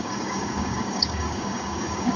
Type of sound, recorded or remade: remade